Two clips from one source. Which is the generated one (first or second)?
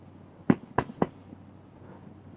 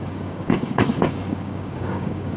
second